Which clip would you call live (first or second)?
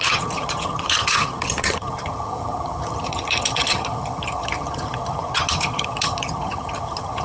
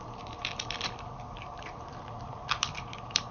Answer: second